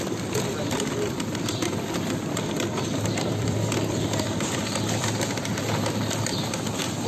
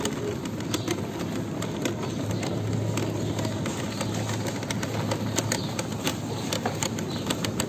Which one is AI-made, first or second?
first